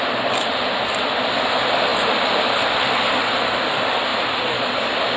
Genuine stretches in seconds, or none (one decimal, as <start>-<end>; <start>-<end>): 0.0-5.2